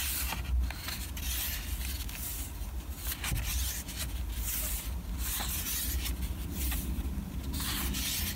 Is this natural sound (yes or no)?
yes